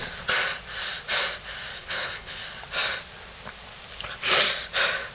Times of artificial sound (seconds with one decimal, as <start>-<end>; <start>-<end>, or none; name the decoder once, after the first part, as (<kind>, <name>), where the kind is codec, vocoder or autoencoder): 1.7-2.4 (codec, HILCodec)